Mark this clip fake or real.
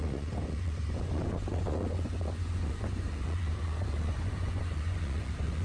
fake